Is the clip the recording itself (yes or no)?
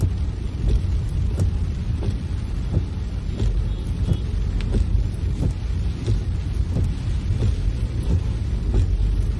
yes